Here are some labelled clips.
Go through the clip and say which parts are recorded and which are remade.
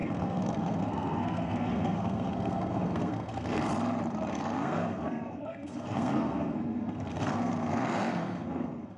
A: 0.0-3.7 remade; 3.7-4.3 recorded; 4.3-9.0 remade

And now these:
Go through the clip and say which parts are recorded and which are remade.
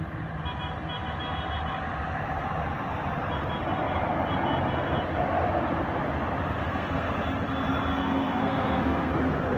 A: 0.0-6.6 recorded; 6.6-7.1 remade; 7.1-7.9 recorded; 7.9-9.1 remade; 9.1-9.6 recorded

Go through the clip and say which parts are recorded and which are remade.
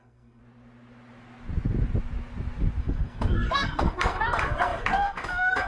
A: 0.0-0.4 remade; 0.4-2.8 recorded; 2.8-5.7 remade